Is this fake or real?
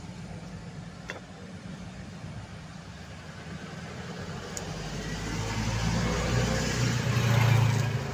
real